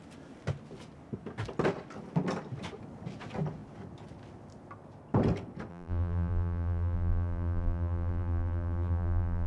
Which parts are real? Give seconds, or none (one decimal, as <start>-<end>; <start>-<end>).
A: 0.0-5.7